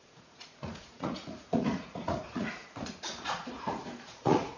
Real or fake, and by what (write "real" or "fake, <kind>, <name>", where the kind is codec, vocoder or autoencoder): fake, vocoder, Vocos